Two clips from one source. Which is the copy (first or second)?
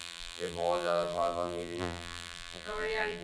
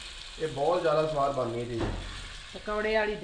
first